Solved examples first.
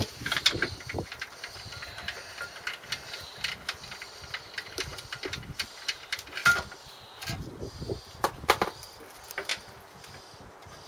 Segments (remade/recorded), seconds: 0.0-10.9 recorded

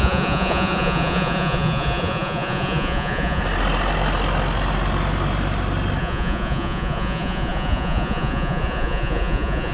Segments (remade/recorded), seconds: 0.0-3.4 remade; 3.4-6.0 recorded; 6.0-9.7 remade

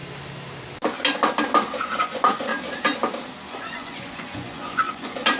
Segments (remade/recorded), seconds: 0.0-2.0 recorded; 2.0-2.5 remade; 2.5-3.5 recorded; 3.5-5.4 remade

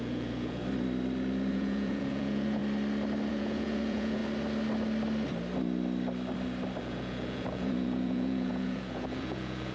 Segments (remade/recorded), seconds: 0.0-0.6 remade; 0.6-1.5 recorded; 1.5-2.6 remade; 2.6-3.3 recorded; 3.3-4.2 remade; 4.2-6.8 recorded; 6.8-9.7 remade

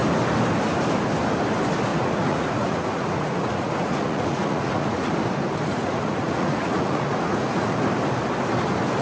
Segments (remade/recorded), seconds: 0.0-1.9 recorded; 1.9-5.1 remade; 5.1-5.7 recorded; 5.7-7.8 remade; 7.8-9.0 recorded

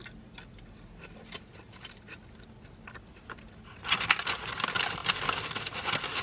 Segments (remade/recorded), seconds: 0.0-6.2 recorded